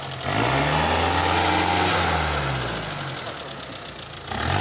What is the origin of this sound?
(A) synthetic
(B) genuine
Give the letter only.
B